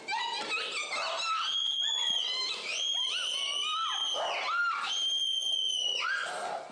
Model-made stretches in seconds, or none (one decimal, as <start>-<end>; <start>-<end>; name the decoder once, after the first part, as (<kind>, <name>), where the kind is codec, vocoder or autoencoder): 1.6-2.2 (vocoder, Vocos); 5.3-6.3